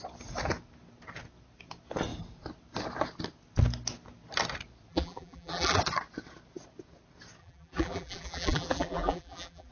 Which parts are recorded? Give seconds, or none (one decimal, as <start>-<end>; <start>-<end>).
0.0-4.9; 5.8-7.4